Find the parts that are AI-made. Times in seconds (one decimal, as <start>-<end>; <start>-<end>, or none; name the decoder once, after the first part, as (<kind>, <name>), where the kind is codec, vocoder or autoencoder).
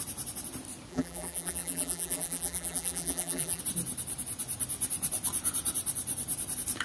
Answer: 0.9-3.6 (vocoder, BigVGAN v2)